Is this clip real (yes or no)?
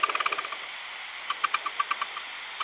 yes